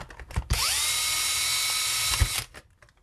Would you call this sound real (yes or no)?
yes